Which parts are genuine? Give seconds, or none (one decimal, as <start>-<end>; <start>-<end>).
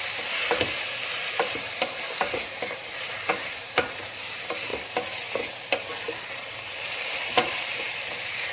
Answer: 4.7-5.9